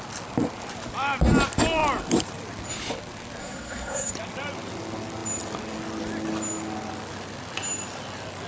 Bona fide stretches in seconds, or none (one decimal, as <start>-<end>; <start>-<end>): 0.0-3.4; 4.1-8.5